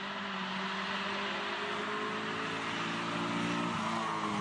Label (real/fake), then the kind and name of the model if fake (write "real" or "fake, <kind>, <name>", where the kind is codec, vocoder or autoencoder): real